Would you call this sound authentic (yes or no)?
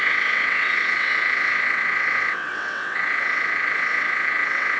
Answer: no